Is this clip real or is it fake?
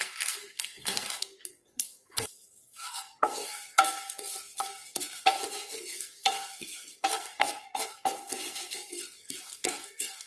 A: fake